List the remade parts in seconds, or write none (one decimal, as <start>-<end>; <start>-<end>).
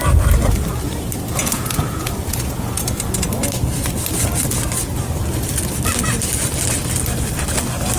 1.4-2.8